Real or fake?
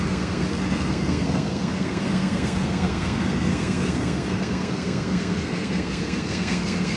fake